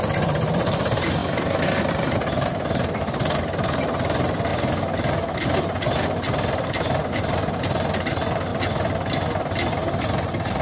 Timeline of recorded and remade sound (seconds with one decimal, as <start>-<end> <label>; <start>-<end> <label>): 0.0-1.2 remade; 1.2-1.9 recorded; 1.9-4.5 remade; 4.5-7.1 recorded; 7.1-8.5 remade; 8.5-9.7 recorded; 9.7-10.6 remade